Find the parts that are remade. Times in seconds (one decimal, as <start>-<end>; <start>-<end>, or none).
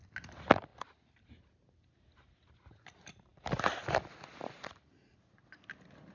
none